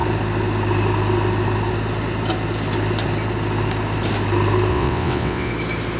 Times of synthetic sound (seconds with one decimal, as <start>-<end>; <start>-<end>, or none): 4.7-5.5

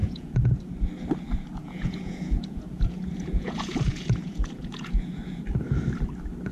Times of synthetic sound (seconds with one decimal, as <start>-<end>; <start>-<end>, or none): 0.0-0.6; 1.6-5.4